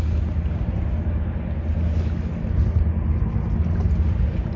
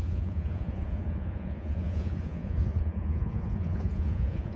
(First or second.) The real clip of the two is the first